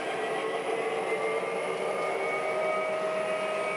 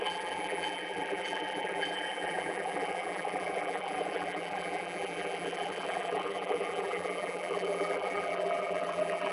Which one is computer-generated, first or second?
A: second